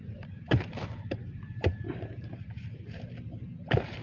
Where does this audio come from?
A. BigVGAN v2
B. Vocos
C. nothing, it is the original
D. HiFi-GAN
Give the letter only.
A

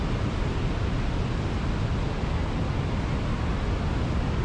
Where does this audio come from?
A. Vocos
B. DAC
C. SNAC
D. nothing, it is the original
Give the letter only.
D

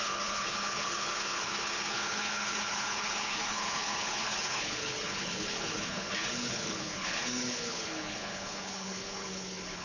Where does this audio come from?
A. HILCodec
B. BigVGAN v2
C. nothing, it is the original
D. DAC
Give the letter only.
A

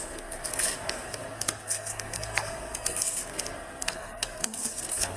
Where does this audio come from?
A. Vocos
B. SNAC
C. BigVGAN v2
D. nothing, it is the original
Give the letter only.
B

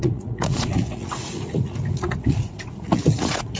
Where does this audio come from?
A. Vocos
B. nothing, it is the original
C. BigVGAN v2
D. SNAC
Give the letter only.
A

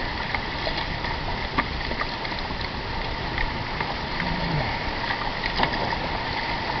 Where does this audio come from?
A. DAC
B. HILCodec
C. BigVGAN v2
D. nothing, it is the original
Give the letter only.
D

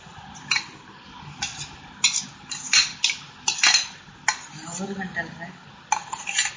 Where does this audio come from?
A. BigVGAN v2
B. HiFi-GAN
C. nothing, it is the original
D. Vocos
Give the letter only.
C